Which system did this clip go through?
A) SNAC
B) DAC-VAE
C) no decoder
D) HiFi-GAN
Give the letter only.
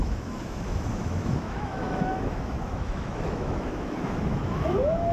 B